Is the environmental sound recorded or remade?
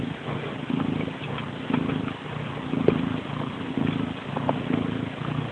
recorded